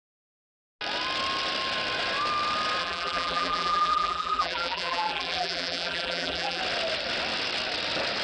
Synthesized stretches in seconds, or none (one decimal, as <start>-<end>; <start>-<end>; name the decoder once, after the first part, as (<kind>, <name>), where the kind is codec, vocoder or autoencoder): 2.8-6.6 (vocoder, BigVGAN v2)